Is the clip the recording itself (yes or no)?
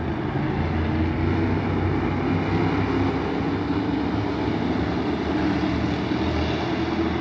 yes